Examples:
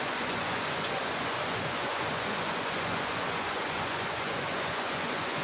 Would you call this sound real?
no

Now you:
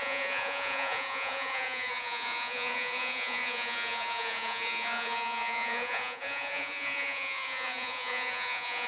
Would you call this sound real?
no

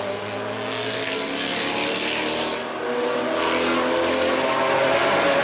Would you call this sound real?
yes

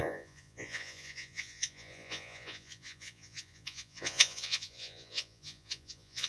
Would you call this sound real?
no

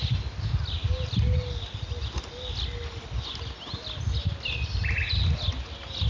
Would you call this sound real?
yes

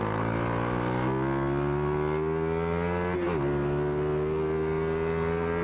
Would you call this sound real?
yes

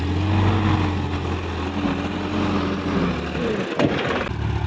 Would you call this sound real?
yes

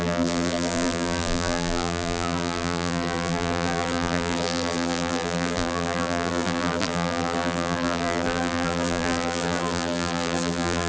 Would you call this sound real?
no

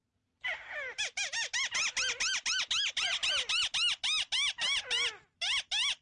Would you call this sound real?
yes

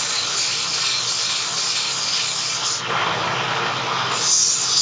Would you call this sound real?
yes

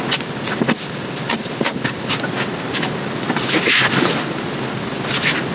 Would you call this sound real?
yes